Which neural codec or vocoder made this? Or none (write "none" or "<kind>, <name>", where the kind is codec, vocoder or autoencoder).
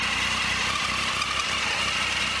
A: none